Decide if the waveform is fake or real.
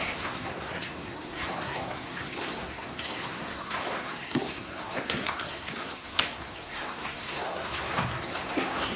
fake